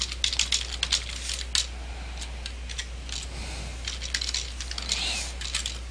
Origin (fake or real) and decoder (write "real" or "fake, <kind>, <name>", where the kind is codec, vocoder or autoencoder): real